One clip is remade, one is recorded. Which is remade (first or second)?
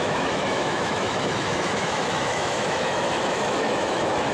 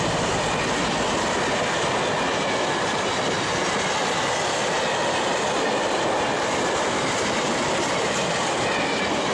first